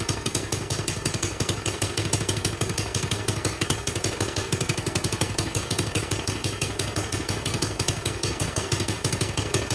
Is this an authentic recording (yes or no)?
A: no